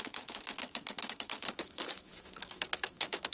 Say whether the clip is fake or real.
fake